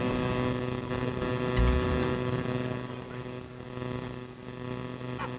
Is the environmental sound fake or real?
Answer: real